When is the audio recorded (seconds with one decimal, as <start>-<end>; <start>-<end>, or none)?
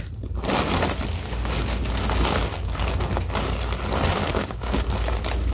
0.0-2.5; 3.0-4.2; 4.9-5.5